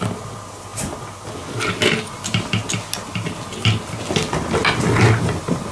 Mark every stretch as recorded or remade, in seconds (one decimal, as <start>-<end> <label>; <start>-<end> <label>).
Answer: 0.0-5.7 recorded

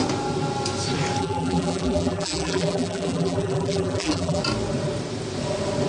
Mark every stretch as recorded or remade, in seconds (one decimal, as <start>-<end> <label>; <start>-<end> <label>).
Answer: 0.0-1.2 recorded; 1.2-4.4 remade; 4.4-5.9 recorded

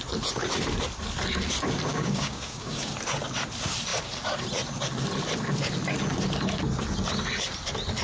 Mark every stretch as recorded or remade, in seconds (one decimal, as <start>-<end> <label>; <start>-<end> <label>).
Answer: 0.0-1.9 recorded; 1.9-2.9 remade; 2.9-8.0 recorded

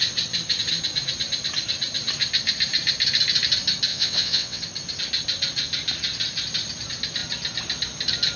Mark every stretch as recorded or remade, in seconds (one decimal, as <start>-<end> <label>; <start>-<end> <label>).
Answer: 0.0-3.9 recorded; 3.9-4.6 remade; 4.6-8.4 recorded

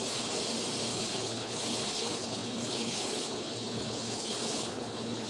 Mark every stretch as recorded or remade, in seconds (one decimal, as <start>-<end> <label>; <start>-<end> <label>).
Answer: 0.0-0.4 remade; 0.4-0.9 recorded; 0.9-5.3 remade

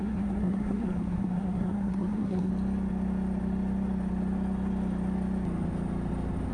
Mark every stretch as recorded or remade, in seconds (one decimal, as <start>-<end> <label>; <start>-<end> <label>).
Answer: 0.0-2.5 remade; 2.5-6.5 recorded

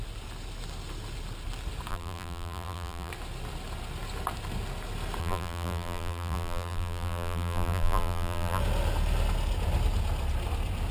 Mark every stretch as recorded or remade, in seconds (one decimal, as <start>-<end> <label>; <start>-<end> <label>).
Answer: 0.0-1.9 recorded; 1.9-3.1 remade; 3.1-5.2 recorded; 5.2-8.6 remade; 8.6-10.9 recorded

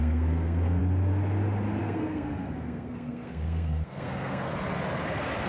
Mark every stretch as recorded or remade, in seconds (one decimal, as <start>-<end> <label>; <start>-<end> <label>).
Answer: 0.0-0.8 remade; 0.8-1.8 recorded; 1.8-4.5 remade; 4.5-5.5 recorded